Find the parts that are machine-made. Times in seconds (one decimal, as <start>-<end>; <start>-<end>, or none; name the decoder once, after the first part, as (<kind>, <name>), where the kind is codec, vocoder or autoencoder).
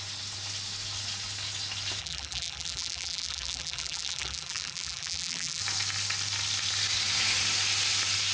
2.0-5.6 (vocoder, BigVGAN v2)